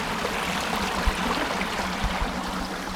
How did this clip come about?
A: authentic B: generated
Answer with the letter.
A